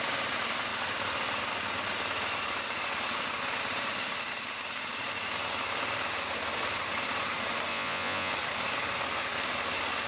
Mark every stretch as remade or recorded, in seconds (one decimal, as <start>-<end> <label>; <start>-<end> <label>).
0.0-7.7 recorded; 7.7-8.3 remade; 8.3-10.1 recorded